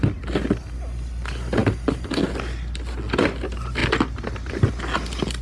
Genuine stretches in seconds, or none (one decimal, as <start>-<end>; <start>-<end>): 0.0-5.4

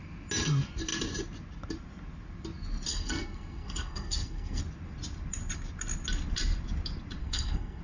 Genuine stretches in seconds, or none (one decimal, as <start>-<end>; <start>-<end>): 0.0-2.9; 4.6-7.2

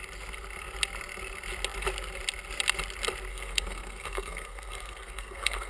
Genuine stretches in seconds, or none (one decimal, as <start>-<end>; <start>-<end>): 0.0-3.3

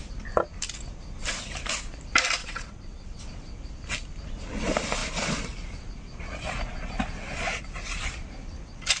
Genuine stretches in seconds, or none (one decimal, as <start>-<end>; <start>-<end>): 0.0-2.4; 3.2-9.0